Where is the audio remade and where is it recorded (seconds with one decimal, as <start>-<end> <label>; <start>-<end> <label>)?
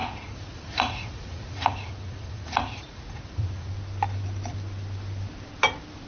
0.0-3.7 remade; 3.7-6.1 recorded